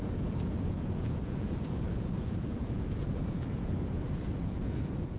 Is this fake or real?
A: fake